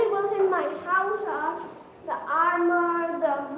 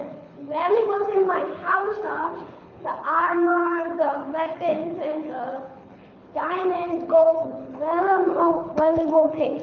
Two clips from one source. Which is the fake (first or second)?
second